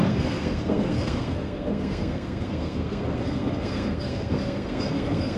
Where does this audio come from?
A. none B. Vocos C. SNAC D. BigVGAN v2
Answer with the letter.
C